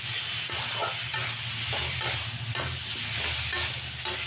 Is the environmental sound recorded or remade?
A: recorded